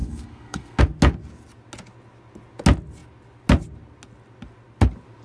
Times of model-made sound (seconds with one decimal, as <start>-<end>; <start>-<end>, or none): 0.0-0.8